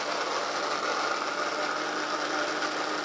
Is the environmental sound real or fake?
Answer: real